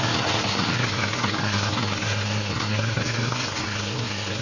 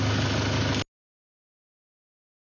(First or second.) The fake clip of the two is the first